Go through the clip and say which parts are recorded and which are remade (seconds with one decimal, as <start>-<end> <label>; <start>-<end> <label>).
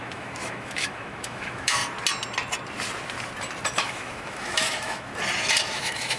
0.0-1.8 remade; 1.8-3.7 recorded; 3.7-5.1 remade; 5.1-5.6 recorded; 5.6-6.2 remade